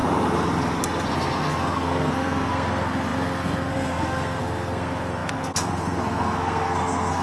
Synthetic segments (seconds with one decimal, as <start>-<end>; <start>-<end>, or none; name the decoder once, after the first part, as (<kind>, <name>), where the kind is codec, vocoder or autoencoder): 1.1-7.2 (codec, SNAC)